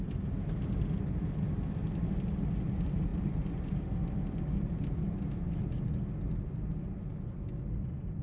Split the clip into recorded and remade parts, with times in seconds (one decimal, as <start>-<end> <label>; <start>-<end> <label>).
0.0-3.1 recorded; 3.1-3.8 remade; 3.8-8.2 recorded